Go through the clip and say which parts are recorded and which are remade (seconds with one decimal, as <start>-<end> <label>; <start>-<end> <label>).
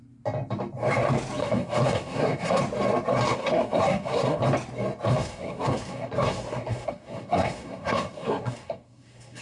0.0-1.4 recorded; 1.4-2.6 remade; 2.6-3.3 recorded; 3.3-4.4 remade; 4.4-5.1 recorded; 5.1-9.4 remade